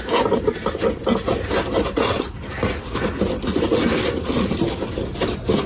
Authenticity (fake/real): real